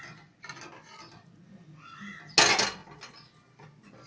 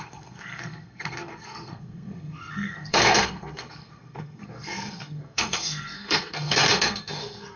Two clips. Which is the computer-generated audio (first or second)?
second